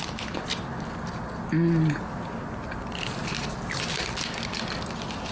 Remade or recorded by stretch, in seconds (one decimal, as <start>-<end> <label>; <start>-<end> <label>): 0.0-5.3 recorded